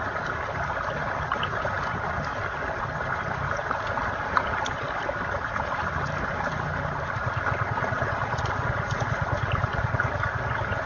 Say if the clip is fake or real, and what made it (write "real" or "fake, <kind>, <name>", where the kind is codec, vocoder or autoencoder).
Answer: real